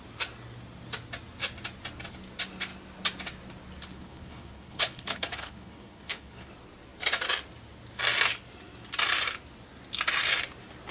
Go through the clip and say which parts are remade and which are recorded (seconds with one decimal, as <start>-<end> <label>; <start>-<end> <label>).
0.0-3.9 recorded; 3.9-6.5 remade; 6.5-10.9 recorded